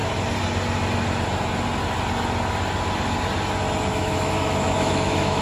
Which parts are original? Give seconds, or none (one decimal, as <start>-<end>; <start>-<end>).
0.0-3.9